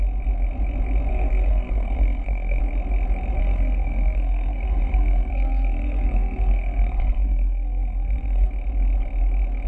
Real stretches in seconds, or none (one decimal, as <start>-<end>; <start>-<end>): 0.0-1.1; 2.6-3.4; 8.5-9.7